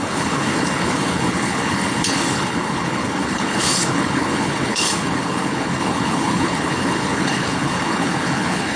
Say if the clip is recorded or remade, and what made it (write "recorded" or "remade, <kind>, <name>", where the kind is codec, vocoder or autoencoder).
remade, codec, HILCodec